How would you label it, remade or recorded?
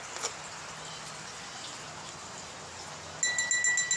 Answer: recorded